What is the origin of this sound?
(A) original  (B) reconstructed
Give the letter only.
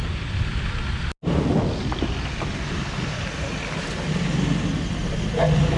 A